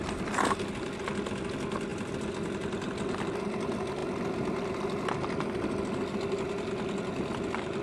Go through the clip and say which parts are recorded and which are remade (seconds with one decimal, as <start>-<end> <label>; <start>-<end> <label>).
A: 0.0-7.8 recorded